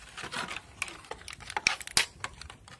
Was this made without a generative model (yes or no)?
yes